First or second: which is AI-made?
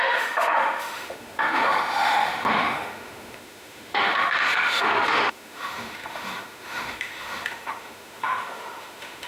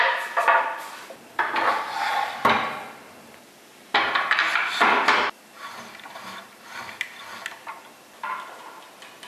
first